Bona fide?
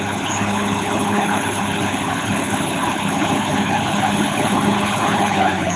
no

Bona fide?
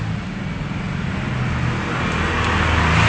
yes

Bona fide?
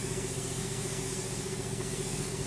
no